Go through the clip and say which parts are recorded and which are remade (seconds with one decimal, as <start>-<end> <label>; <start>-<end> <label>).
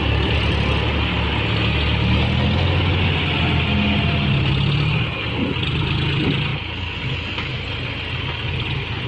0.0-9.1 recorded